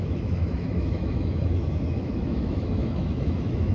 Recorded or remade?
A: remade